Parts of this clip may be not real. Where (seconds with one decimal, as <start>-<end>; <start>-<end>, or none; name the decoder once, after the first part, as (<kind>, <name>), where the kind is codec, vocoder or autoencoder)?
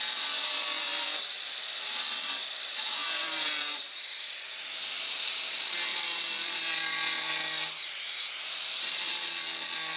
0.9-5.1 (vocoder, BigVGAN v2); 5.9-8.4